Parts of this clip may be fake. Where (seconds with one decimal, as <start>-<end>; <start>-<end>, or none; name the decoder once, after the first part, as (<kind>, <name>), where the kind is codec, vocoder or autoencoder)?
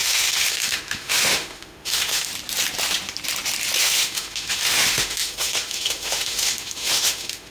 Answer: 0.0-2.3 (autoencoder, DAC-VAE); 3.8-7.5